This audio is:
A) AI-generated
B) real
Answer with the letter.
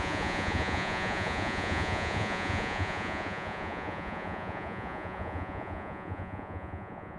A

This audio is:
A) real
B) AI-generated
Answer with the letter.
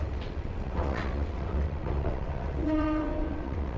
B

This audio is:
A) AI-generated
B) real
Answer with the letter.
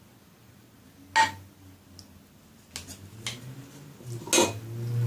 B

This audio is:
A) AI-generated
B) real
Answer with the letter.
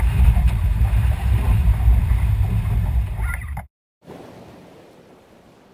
A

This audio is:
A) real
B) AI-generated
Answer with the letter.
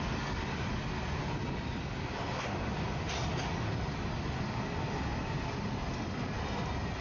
A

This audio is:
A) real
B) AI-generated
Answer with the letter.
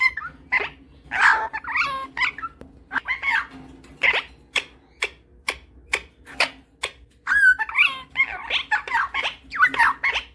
A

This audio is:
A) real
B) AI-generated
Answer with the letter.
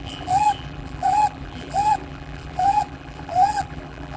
B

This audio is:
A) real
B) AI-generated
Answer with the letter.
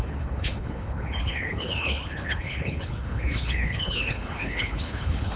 B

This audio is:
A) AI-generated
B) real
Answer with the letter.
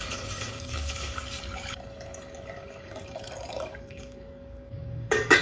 A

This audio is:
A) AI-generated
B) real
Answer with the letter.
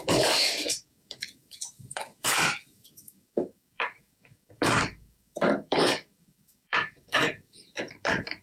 A